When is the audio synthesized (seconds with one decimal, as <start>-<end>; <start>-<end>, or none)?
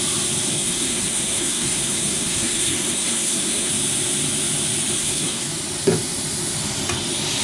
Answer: 0.5-3.7; 5.0-5.5